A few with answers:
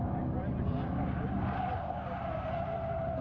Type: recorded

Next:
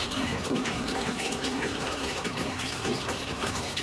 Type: remade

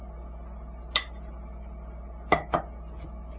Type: recorded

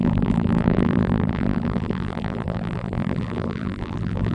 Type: remade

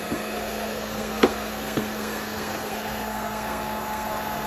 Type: remade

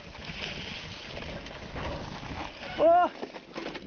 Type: recorded